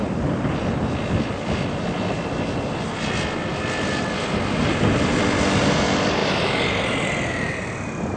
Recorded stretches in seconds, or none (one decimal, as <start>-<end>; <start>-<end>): 0.0-8.2